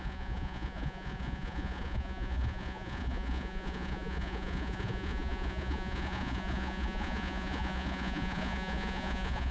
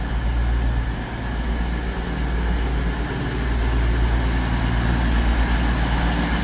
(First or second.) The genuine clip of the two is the second